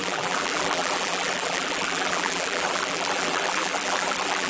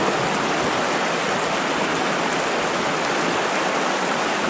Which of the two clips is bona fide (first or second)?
second